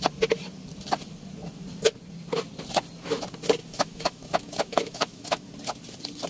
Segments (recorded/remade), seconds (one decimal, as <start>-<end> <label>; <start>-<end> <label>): 0.0-3.6 recorded; 3.6-5.5 remade; 5.5-6.3 recorded